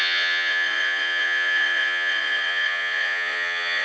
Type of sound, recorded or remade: remade